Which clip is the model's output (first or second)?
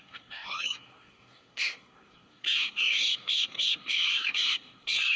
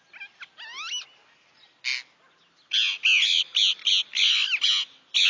first